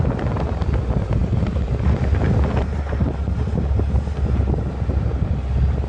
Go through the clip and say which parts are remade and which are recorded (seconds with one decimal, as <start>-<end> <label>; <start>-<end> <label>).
0.0-5.9 recorded